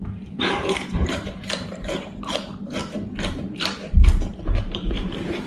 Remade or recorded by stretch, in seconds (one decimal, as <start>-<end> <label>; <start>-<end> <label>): 0.0-2.8 remade; 2.8-3.3 recorded; 3.3-5.5 remade